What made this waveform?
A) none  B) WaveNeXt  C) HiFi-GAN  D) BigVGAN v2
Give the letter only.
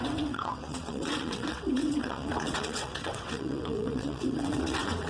B